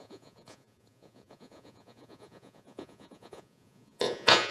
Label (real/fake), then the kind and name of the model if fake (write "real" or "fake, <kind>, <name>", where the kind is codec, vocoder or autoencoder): fake, vocoder, Vocos